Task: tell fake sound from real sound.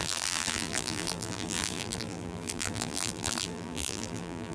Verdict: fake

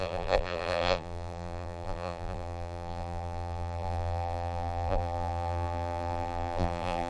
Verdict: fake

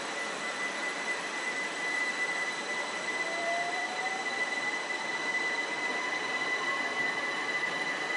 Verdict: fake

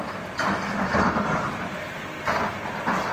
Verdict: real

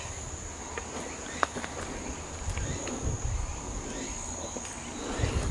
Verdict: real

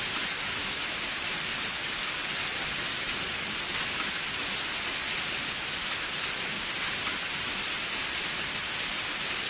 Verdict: real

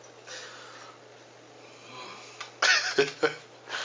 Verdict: real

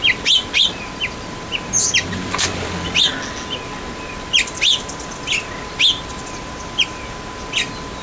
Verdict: real